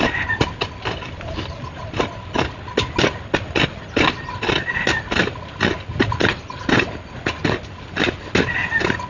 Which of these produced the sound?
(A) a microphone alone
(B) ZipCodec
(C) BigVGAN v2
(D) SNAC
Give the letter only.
A